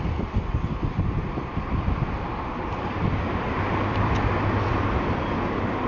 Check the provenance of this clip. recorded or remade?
remade